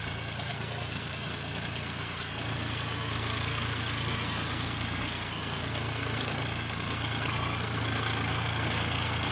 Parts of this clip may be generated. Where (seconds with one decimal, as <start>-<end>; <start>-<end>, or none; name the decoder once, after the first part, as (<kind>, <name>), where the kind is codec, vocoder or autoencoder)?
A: 0.0-9.3 (codec, SNAC)